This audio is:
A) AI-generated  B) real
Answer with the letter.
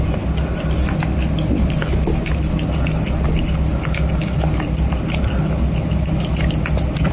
B